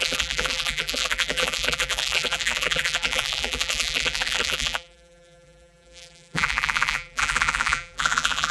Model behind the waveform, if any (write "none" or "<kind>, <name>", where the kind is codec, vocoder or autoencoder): vocoder, BigVGAN v2